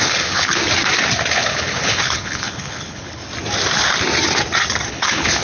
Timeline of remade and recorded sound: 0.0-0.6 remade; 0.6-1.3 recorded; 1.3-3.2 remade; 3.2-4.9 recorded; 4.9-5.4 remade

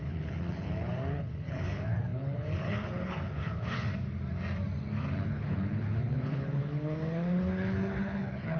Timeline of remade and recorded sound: 0.0-3.9 remade; 3.9-5.2 recorded; 5.2-8.6 remade

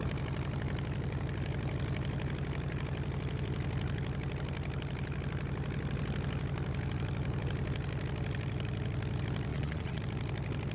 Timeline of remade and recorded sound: 0.0-9.5 recorded; 9.5-10.0 remade; 10.0-10.7 recorded

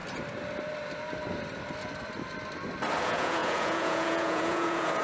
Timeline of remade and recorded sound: 0.0-3.0 recorded; 3.0-5.0 remade

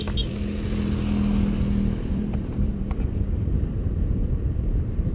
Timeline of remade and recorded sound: 0.0-2.1 recorded; 2.1-5.1 remade

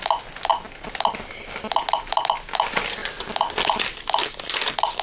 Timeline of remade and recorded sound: 0.0-5.0 recorded